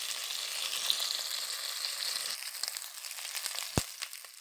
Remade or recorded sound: recorded